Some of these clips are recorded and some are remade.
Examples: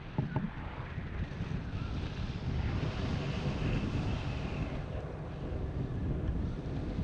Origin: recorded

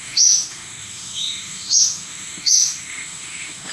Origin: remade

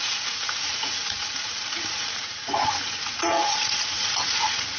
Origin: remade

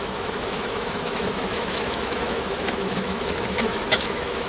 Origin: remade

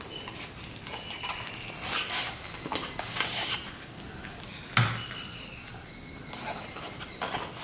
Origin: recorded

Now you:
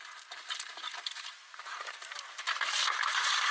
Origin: recorded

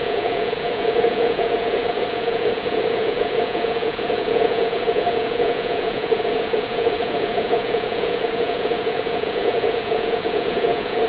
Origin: remade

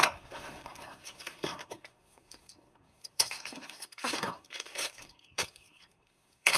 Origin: remade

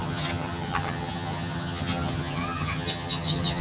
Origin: remade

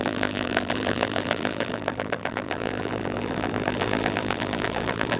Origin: remade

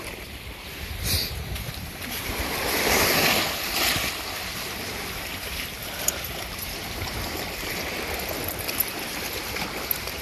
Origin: remade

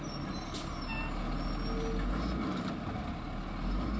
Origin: recorded